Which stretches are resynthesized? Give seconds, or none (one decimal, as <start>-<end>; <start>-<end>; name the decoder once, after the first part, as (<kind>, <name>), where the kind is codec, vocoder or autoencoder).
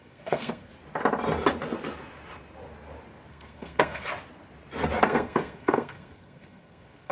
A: 0.0-0.7 (codec, SNAC); 3.3-4.1; 5.0-7.1